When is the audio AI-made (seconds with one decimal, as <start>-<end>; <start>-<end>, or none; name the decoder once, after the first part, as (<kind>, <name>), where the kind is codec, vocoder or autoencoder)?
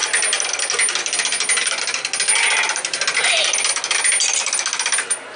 none